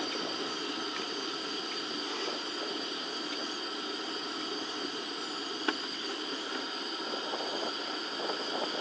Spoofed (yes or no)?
no